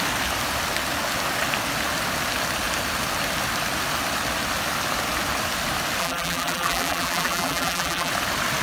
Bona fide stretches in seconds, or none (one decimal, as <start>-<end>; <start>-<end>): 0.0-6.0; 8.1-8.6